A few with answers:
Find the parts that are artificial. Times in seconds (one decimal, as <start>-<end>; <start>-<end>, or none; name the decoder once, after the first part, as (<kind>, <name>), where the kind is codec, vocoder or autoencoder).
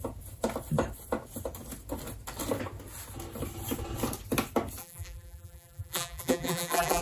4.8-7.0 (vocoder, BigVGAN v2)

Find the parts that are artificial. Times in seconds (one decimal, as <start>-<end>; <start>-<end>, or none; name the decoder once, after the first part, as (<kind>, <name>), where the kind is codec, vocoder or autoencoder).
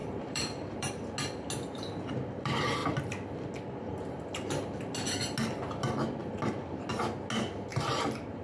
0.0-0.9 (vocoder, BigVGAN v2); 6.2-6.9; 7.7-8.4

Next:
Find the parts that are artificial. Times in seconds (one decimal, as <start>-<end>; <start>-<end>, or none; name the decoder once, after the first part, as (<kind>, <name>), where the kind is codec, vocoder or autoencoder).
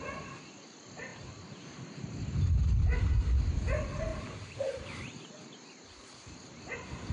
4.1-6.6 (vocoder, BigVGAN v2)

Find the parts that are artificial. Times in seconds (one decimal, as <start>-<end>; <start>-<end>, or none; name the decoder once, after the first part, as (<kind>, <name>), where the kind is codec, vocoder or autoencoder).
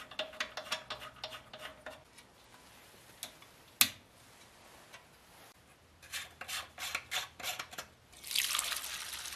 none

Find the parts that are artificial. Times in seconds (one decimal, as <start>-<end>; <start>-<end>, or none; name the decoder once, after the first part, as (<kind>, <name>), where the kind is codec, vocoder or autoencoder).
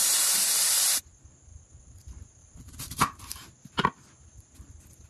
2.4-4.5 (vocoder, BigVGAN v2)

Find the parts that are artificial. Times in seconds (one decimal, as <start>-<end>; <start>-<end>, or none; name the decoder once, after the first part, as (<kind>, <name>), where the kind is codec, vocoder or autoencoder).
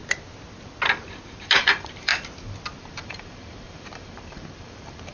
1.6-2.1 (vocoder, BigVGAN v2); 2.8-5.1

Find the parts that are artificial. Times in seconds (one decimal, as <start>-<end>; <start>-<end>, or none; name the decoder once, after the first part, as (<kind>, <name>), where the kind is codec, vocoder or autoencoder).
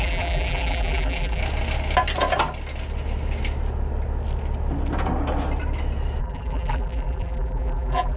0.0-1.4 (vocoder, BigVGAN v2); 6.2-8.2